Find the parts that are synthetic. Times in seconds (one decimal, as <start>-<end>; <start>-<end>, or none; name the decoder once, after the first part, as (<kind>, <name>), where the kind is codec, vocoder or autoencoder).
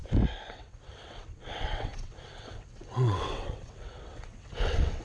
0.5-5.0 (vocoder, WaveNeXt)